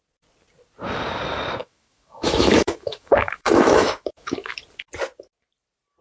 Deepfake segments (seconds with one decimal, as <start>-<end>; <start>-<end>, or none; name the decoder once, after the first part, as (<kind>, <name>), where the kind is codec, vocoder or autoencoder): 1.6-4.6 (autoencoder, DAC-VAE)